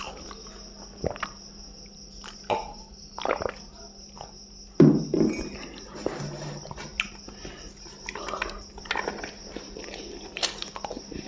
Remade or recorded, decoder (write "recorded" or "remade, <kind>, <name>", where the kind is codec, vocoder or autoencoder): recorded